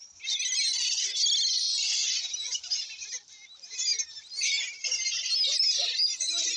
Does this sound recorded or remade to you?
recorded